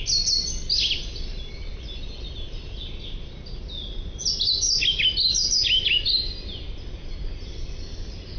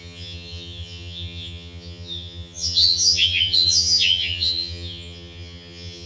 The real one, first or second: first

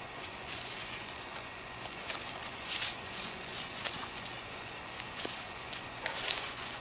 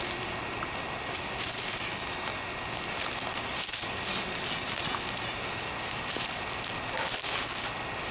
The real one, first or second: second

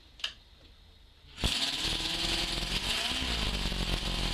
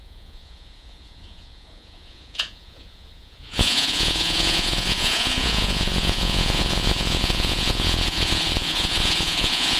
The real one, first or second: first